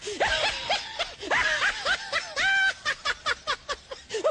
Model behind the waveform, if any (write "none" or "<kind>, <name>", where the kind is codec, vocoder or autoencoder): none